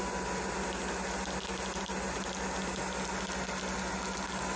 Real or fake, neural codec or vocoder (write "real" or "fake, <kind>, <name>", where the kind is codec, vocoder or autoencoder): real